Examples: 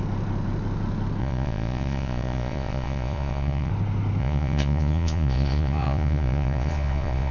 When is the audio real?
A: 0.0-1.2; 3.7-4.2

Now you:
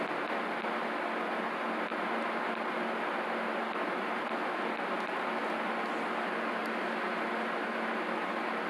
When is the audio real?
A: 0.0-8.7

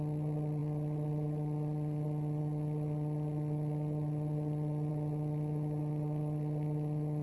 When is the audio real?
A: 0.0-7.2